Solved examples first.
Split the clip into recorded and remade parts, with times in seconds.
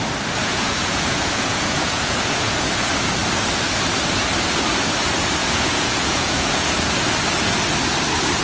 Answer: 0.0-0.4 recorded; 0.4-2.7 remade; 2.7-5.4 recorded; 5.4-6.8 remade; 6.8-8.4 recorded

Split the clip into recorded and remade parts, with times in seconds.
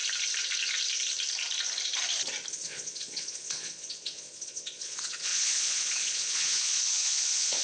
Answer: 0.0-2.5 recorded; 2.5-7.6 remade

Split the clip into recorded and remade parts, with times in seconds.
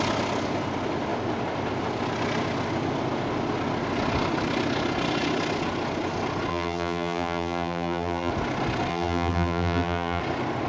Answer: 0.0-6.5 recorded; 6.5-8.3 remade; 8.3-8.9 recorded; 8.9-10.2 remade; 10.2-10.7 recorded